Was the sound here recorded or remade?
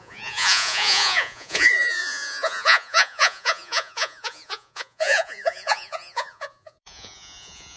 remade